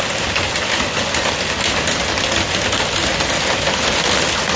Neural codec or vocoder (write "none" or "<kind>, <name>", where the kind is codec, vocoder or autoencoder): none